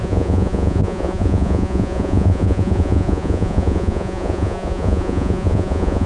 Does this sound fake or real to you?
fake